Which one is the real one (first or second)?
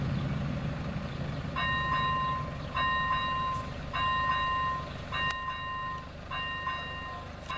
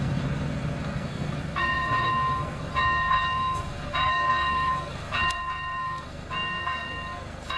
first